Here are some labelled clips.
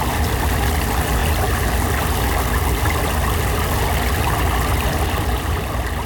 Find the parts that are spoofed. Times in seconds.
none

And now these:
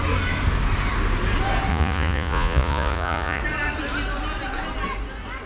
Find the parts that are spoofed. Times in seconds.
1.7-3.4 (vocoder, Vocos)

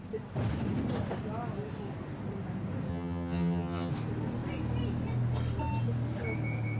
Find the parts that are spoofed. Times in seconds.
2.9-3.9 (vocoder, HiFi-GAN)

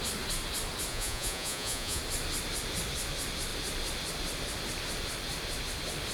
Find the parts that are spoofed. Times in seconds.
0.9-2.0 (vocoder, Vocos)

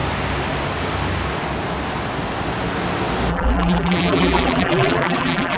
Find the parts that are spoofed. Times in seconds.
3.3-5.6 (vocoder, BigVGAN v2)

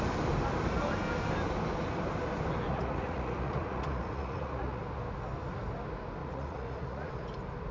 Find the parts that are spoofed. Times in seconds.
2.7-4.8 (vocoder, Vocos); 6.2-7.1